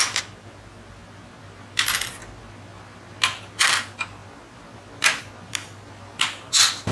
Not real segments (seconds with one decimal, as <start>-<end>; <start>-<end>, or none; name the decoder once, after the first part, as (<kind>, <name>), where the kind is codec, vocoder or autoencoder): none